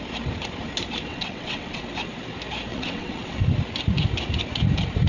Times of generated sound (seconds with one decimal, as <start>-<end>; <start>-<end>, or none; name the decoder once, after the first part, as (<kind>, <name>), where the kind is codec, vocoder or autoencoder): 1.1-1.8 (vocoder, WaveNeXt); 2.7-3.4